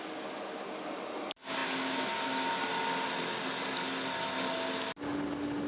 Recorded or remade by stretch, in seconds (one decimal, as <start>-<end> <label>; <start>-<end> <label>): 0.0-5.7 recorded